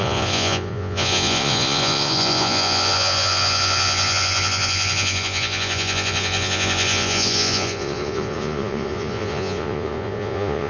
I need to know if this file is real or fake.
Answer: fake